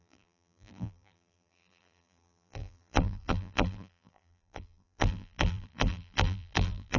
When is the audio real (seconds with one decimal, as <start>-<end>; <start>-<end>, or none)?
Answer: none